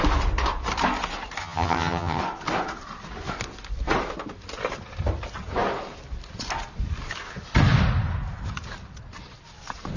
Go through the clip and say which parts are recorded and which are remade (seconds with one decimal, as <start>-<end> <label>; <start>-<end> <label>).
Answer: 0.0-1.4 recorded; 1.4-2.2 remade; 2.2-10.0 recorded